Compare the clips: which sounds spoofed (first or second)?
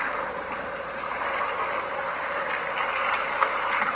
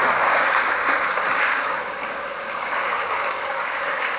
second